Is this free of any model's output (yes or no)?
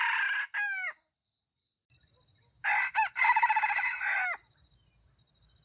yes